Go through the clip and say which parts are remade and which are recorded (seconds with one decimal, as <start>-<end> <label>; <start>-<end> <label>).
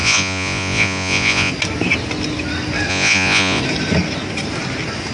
0.0-1.5 remade; 1.5-2.9 recorded; 2.9-3.6 remade; 3.6-5.1 recorded